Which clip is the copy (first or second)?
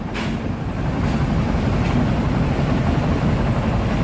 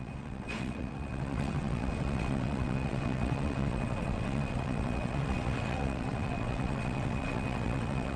second